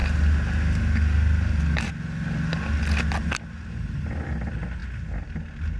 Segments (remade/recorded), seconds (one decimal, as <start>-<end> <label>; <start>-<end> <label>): 0.0-5.8 recorded